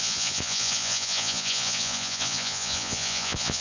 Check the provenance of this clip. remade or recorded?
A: remade